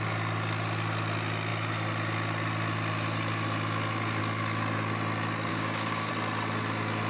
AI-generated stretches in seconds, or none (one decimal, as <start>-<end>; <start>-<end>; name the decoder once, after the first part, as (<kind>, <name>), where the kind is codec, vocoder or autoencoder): 5.5-6.1 (codec, DAC)